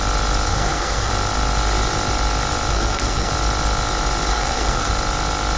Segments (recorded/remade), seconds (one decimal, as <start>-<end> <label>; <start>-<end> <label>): 0.0-0.5 recorded; 0.5-1.1 remade; 1.1-2.7 recorded; 2.7-3.3 remade; 3.3-4.3 recorded; 4.3-4.9 remade; 4.9-5.6 recorded